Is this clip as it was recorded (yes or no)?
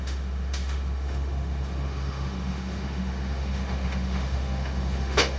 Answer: no